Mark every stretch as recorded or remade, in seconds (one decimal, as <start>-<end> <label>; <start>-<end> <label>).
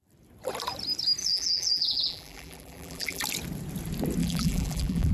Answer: 0.0-1.2 recorded; 1.2-3.2 remade; 3.2-4.2 recorded; 4.2-5.1 remade